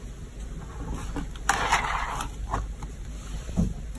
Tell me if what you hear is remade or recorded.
recorded